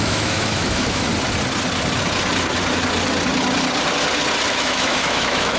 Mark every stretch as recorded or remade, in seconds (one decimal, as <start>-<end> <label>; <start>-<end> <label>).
0.0-1.1 remade; 1.1-4.5 recorded; 4.5-5.6 remade